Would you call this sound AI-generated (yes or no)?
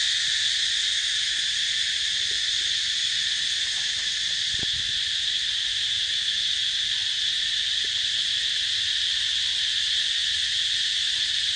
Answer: no